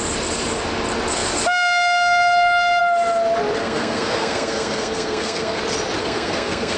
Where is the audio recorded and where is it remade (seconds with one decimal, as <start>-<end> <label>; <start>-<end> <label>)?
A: 0.0-3.6 recorded; 3.6-5.6 remade; 5.6-6.0 recorded; 6.0-6.8 remade